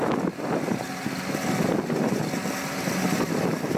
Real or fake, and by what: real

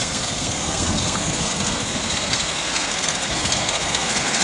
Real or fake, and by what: fake, codec, SNAC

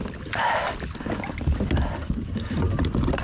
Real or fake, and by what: real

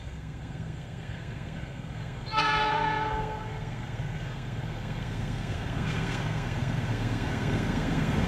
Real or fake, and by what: fake, codec, SNAC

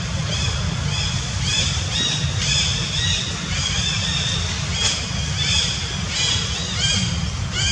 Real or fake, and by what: real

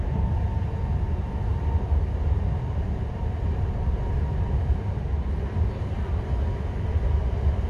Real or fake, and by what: real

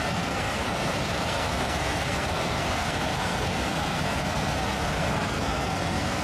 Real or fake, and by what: fake, codec, SNAC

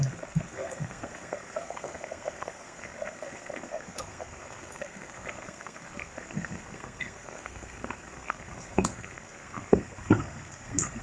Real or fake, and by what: fake, codec, SNAC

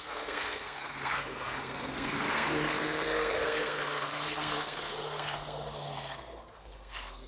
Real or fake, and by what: fake, codec, SNAC